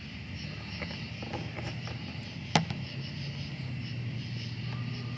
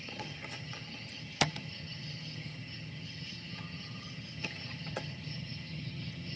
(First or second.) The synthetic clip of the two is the second